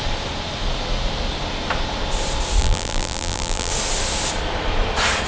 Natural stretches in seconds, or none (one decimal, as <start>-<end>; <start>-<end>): 0.0-2.6; 3.7-5.3